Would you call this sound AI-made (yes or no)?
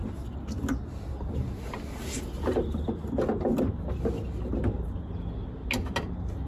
no